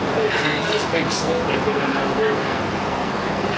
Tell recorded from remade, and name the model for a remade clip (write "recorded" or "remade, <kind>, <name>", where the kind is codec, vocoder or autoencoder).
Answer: remade, codec, SNAC